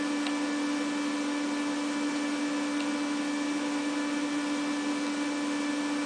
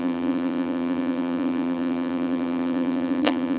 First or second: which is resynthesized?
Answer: second